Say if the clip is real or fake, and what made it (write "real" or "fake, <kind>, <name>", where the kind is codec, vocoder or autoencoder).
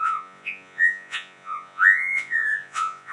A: fake, vocoder, Vocos